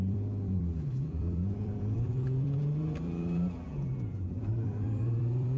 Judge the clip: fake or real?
fake